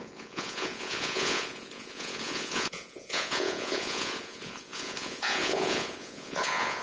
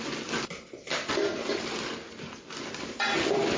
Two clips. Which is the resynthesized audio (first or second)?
first